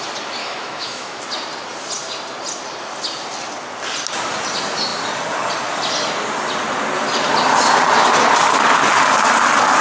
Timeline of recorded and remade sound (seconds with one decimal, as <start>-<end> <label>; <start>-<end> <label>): 0.0-0.4 recorded; 0.4-1.2 remade; 1.2-9.8 recorded